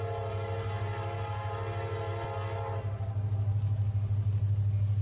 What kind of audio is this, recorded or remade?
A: recorded